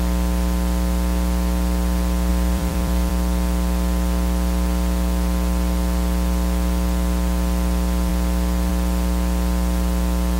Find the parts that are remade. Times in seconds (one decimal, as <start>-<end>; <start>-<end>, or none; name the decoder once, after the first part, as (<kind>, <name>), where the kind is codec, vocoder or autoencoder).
2.3-3.1 (vocoder, BigVGAN v2)